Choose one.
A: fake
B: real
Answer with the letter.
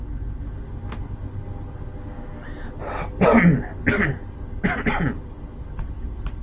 B